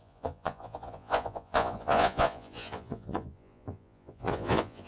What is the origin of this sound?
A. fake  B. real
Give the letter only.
A